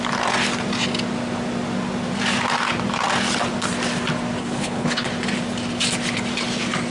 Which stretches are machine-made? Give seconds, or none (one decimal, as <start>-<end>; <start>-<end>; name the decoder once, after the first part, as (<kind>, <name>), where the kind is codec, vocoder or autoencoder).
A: 4.4-5.1 (codec, HILCodec)